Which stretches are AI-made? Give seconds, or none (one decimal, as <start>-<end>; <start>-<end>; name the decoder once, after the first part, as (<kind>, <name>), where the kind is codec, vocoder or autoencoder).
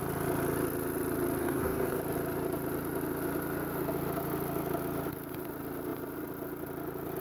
1.4-2.0 (codec, SNAC)